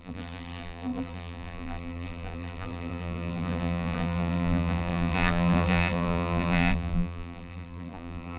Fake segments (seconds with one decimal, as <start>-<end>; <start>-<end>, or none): 0.0-8.4